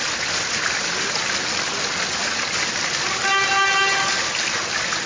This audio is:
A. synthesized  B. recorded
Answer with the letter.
B